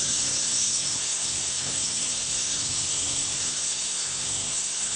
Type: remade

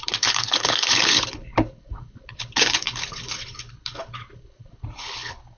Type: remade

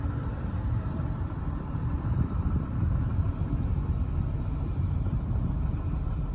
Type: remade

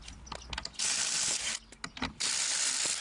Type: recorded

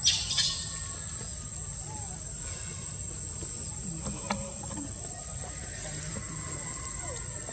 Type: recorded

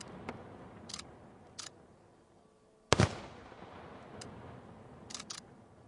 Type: recorded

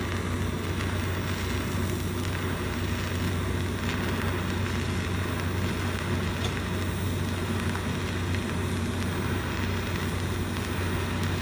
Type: recorded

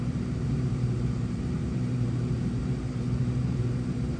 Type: remade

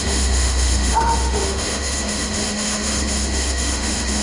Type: remade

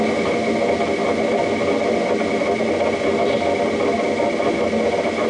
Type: recorded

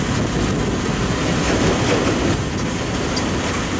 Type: recorded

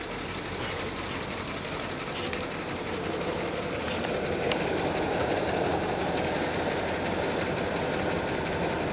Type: recorded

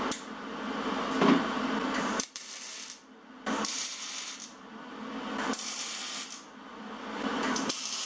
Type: remade